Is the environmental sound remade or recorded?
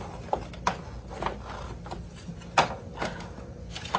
recorded